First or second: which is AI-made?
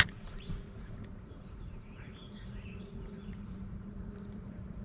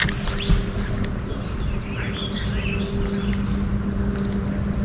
first